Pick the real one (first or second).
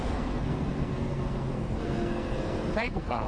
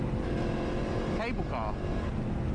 second